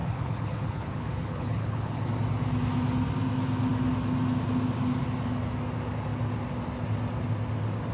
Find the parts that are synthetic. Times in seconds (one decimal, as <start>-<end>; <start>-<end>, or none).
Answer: 0.0-2.0